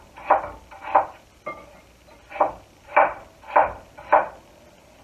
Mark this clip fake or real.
real